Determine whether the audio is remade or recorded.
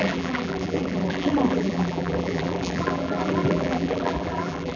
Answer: remade